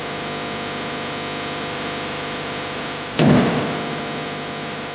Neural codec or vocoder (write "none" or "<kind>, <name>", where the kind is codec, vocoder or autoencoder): none